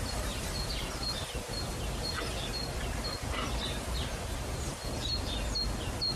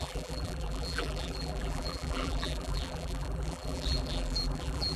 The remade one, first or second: second